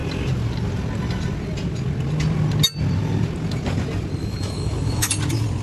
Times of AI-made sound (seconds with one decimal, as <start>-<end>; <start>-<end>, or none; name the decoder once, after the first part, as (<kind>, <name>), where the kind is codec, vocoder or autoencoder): 4.2-5.1 (autoencoder, DAC-VAE)